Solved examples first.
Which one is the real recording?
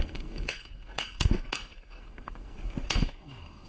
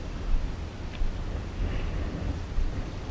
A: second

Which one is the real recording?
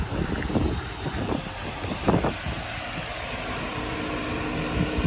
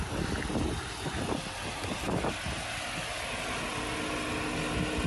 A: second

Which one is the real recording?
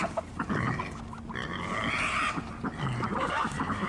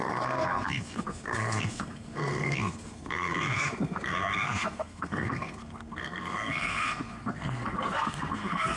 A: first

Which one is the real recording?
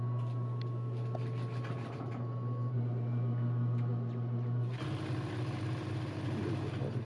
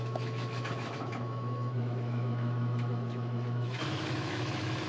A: first